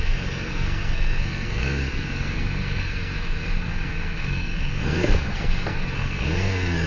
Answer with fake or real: fake